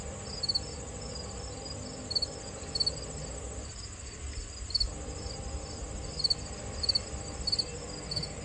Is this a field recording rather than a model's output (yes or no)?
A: yes